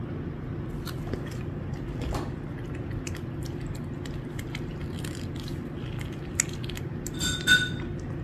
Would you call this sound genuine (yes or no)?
yes